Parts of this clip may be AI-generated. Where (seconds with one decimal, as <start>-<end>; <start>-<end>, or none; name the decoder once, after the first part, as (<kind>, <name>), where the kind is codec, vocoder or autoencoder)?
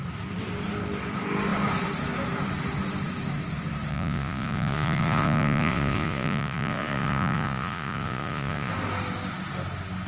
3.9-8.7 (vocoder, Vocos)